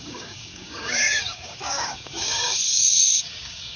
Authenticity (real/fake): fake